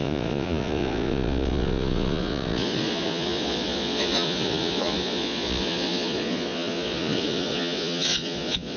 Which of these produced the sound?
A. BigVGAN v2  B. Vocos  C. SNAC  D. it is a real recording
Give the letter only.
B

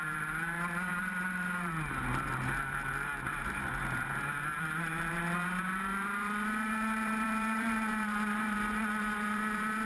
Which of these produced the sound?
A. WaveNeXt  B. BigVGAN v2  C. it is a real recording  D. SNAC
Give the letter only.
B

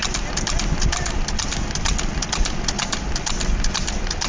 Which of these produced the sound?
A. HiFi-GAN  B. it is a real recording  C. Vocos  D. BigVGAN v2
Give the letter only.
B